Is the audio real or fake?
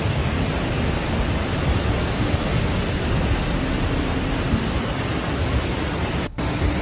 real